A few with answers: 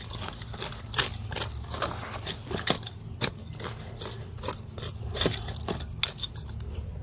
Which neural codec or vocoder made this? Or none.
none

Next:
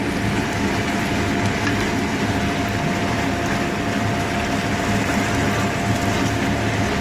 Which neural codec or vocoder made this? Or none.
none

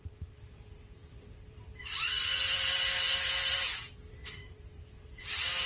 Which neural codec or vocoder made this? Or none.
vocoder, BigVGAN v2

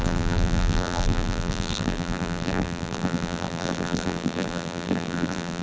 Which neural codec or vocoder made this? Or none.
vocoder, BigVGAN v2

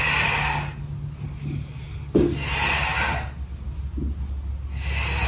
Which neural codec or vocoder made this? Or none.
none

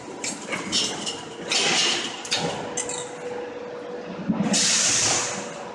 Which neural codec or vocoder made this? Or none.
none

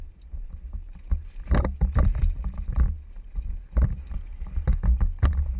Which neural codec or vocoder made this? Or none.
none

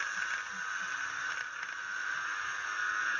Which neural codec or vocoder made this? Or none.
none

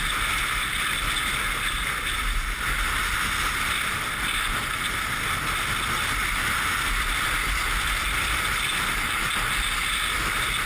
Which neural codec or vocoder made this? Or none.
none